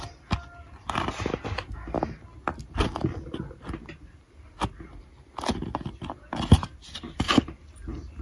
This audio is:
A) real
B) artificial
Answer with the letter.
A